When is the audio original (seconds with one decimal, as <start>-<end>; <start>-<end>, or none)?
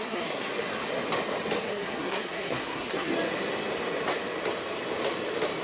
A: 0.5-1.6; 3.1-5.6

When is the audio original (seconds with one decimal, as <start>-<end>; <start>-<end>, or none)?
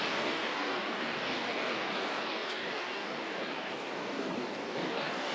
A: none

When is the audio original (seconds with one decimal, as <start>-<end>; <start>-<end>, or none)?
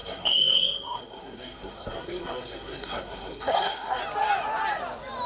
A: 4.0-5.3